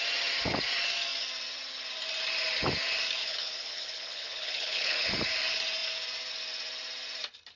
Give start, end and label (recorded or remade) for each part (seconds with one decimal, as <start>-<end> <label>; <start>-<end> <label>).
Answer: 0.0-3.2 recorded; 3.2-5.1 remade; 5.1-7.6 recorded